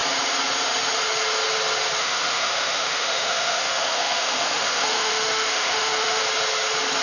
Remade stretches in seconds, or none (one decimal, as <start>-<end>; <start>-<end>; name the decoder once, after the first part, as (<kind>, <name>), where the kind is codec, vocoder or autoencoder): 2.0-6.2 (autoencoder, DAC-VAE)